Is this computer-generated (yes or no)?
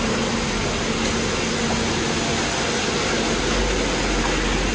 no